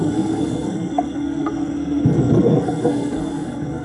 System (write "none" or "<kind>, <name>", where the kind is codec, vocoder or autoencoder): codec, SNAC